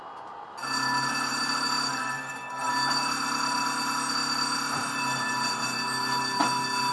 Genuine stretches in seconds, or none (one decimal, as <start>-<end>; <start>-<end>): 0.0-1.9; 2.7-6.9